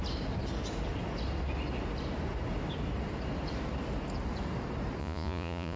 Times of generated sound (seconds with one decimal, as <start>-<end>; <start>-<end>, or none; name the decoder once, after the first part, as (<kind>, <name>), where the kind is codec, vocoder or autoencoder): 5.0-5.8 (vocoder, Vocos)